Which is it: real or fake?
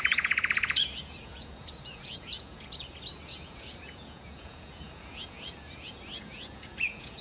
fake